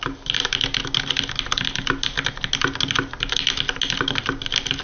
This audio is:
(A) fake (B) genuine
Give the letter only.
B